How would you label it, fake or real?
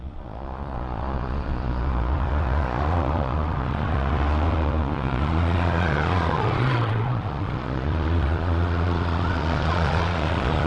fake